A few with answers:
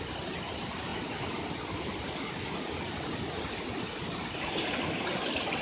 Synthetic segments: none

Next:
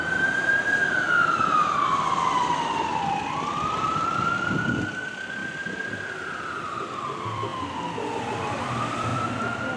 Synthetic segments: 0.0-7.5 (vocoder, BigVGAN v2); 8.2-9.8